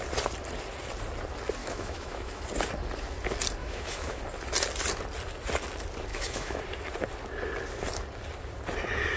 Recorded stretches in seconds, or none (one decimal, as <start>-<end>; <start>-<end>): 0.0-1.6; 2.4-3.6; 4.2-6.1; 6.6-9.2